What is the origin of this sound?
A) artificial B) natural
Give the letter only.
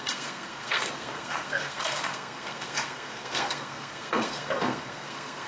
A